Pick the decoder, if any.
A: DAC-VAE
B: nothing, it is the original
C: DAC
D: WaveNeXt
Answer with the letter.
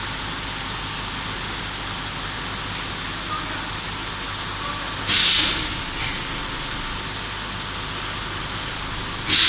B